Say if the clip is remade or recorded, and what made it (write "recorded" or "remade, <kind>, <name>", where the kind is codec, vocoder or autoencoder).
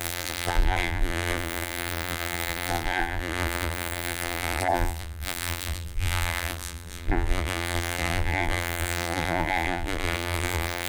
remade, vocoder, BigVGAN v2